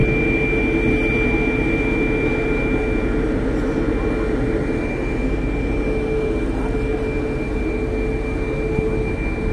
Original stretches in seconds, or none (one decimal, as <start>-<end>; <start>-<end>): 0.0-9.5